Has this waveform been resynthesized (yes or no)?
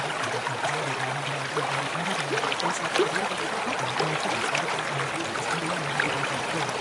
no